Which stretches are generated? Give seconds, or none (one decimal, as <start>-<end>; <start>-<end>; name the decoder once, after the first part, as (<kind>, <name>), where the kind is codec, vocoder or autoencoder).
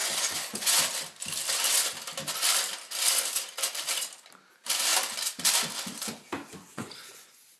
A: 0.0-0.8 (vocoder, Vocos); 6.7-7.6